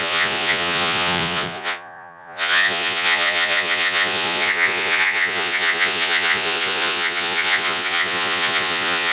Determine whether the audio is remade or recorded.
remade